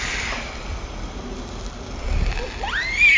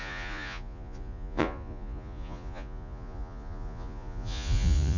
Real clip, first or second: first